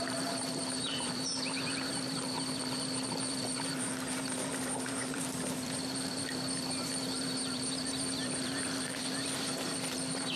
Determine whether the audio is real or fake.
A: fake